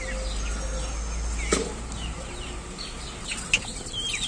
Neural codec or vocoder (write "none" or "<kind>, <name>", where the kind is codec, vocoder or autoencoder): none